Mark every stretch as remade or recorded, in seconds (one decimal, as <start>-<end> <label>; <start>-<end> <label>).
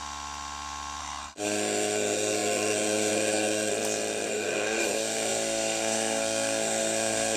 0.0-1.0 recorded; 1.0-3.7 remade; 3.7-4.3 recorded; 4.3-7.4 remade